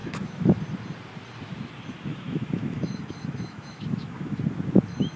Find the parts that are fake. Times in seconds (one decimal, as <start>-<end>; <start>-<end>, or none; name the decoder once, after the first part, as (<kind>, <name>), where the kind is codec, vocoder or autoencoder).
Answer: 0.0-0.6 (autoencoder, DAC-VAE); 2.1-4.4